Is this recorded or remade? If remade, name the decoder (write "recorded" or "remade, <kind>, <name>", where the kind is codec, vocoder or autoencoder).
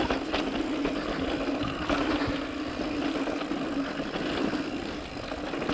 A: recorded